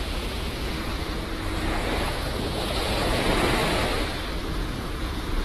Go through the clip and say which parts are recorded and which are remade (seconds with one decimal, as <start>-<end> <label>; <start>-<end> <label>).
0.0-3.6 remade; 3.6-4.6 recorded; 4.6-5.4 remade